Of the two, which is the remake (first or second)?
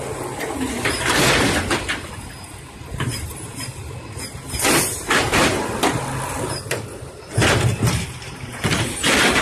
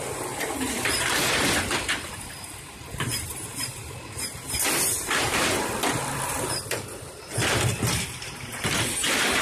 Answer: second